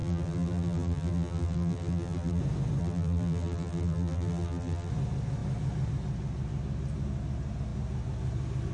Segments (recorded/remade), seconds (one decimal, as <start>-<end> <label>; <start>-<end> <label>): 0.0-2.4 remade; 2.4-2.8 recorded; 2.8-4.9 remade; 4.9-8.7 recorded